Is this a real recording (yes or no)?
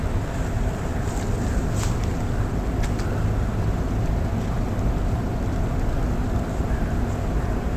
yes